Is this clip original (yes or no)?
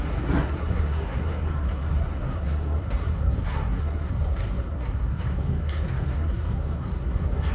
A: no